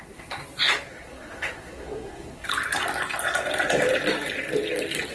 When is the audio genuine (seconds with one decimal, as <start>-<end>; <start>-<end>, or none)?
0.4-0.9; 2.5-5.1